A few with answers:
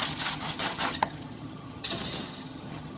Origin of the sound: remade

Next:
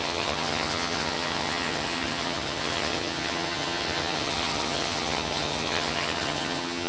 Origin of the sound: remade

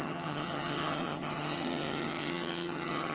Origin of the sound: remade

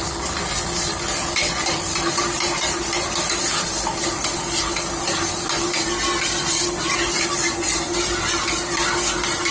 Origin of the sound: recorded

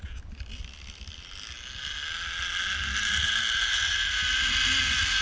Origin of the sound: recorded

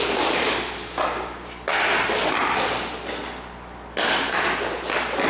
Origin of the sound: recorded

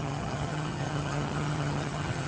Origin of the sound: remade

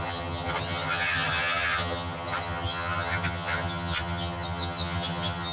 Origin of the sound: remade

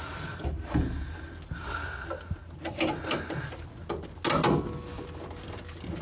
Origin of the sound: recorded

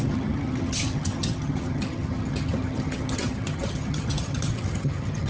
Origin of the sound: remade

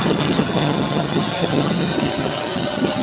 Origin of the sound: remade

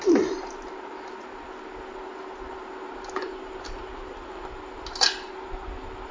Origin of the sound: recorded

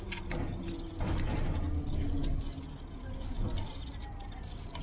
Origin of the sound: recorded